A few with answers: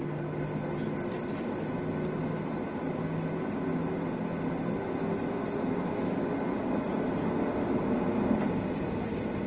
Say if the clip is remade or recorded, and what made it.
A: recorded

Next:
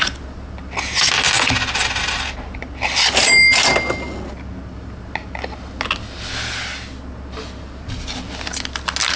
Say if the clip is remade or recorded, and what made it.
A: recorded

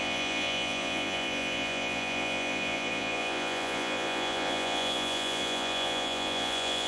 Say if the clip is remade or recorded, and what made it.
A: remade, vocoder, Vocos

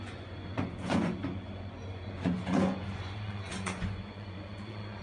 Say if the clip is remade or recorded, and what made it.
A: remade, vocoder, Vocos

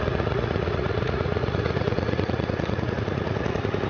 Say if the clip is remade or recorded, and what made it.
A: remade, vocoder, Vocos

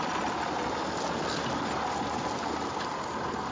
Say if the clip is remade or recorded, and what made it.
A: recorded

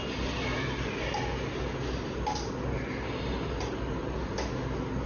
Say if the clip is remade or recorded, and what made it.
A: recorded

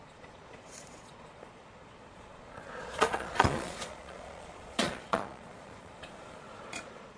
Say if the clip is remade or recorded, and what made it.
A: remade, vocoder, Vocos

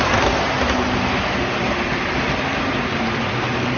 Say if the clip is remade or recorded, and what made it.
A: recorded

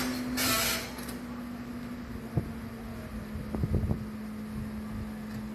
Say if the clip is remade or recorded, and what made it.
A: recorded